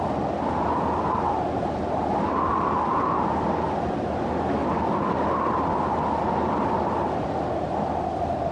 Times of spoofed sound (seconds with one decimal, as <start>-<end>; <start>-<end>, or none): none